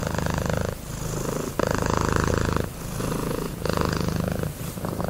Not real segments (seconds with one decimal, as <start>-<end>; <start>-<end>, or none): 3.2-4.2